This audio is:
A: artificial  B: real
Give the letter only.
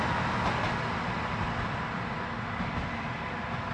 B